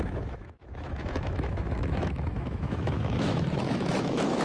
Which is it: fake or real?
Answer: fake